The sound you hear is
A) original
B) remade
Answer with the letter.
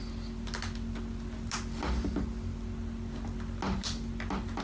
A